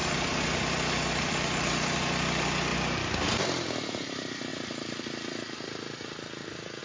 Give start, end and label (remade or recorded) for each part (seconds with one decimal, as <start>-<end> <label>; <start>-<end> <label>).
0.0-2.7 remade; 2.7-3.3 recorded; 3.3-6.8 remade